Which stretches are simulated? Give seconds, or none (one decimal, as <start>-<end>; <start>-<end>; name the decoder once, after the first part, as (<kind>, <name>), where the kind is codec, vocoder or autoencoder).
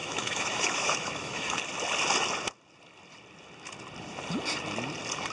0.0-1.6 (autoencoder, DAC-VAE)